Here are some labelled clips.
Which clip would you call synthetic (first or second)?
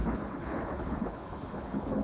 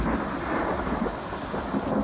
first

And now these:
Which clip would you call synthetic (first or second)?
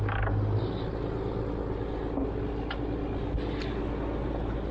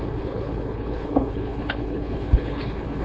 second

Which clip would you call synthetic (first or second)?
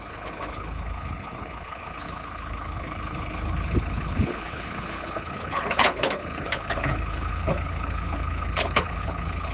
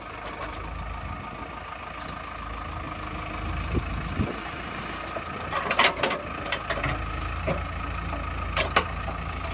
first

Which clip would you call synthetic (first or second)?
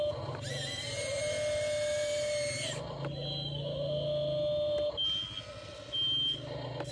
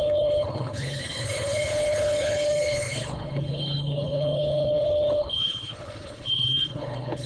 second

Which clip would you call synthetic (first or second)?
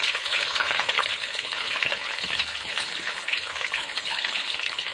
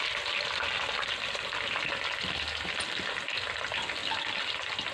first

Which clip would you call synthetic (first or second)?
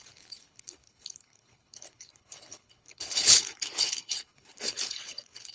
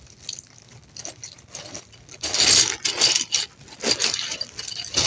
first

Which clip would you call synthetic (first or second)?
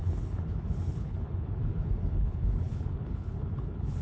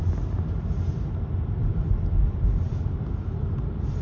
first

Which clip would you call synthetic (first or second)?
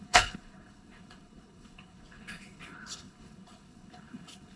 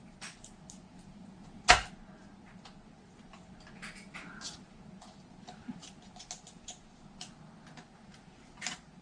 first